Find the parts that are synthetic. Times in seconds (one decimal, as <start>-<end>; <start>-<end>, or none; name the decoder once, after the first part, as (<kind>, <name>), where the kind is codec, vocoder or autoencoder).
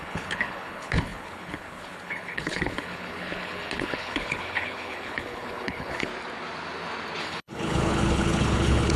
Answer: 0.0-6.1 (codec, HILCodec); 7.2-9.0